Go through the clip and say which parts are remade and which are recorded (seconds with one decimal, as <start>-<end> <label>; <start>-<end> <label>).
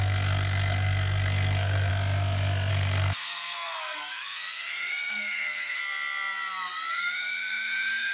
0.0-1.9 remade; 1.9-2.7 recorded; 2.7-5.8 remade; 5.8-6.9 recorded; 6.9-8.1 remade